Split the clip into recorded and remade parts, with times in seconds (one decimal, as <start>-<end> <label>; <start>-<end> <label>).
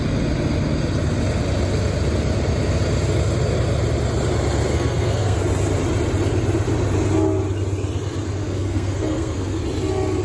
0.0-4.7 recorded; 4.7-5.4 remade; 5.4-8.4 recorded; 8.4-9.6 remade; 9.6-10.2 recorded